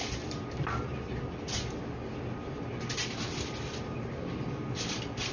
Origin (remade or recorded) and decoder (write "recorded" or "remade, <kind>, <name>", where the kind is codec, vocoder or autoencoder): recorded